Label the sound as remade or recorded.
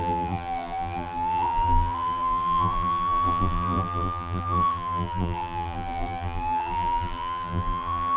remade